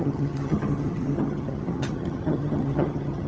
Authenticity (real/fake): fake